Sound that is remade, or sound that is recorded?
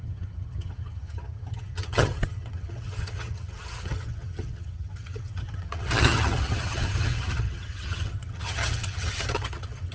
remade